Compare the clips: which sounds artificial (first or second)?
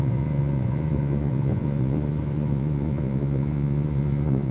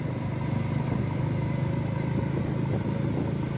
first